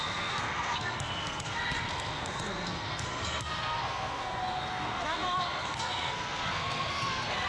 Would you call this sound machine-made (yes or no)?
yes